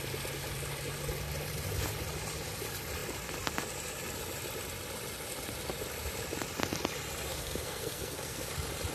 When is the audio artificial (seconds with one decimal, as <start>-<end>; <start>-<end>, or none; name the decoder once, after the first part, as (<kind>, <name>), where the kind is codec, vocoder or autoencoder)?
7.3-8.5 (codec, SNAC)